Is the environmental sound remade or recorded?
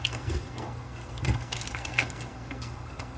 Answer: remade